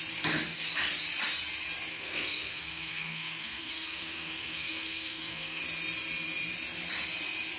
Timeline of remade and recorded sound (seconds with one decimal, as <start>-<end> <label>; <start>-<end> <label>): 0.0-1.9 recorded; 1.9-5.6 remade; 5.6-7.6 recorded